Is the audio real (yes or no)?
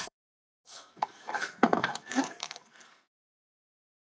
no